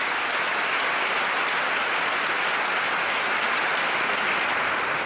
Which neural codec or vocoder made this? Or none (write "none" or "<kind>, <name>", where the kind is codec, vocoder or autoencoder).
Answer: none